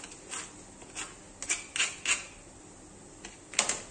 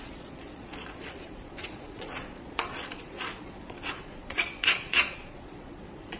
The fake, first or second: second